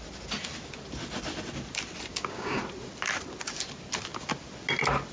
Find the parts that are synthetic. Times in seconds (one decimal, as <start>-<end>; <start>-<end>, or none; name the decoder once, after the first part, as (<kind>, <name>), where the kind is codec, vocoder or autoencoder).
2.1-2.6 (codec, DAC)